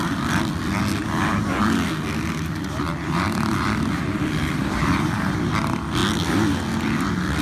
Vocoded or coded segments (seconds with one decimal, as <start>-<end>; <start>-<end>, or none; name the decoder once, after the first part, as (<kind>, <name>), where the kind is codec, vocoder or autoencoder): 0.0-1.0 (vocoder, BigVGAN v2); 2.8-6.0